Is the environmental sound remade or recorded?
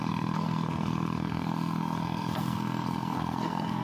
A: remade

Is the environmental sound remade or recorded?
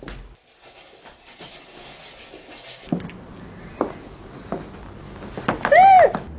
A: recorded